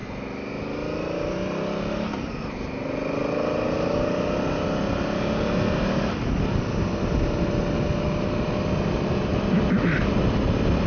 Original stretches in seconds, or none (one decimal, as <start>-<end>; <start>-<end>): 0.0-9.3; 10.1-10.9